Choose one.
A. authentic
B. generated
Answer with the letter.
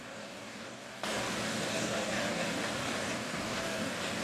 B